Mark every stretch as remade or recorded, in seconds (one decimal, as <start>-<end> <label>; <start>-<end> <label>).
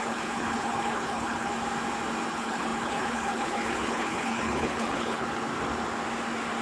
0.0-1.5 remade; 1.5-2.3 recorded; 2.3-5.5 remade; 5.5-6.6 recorded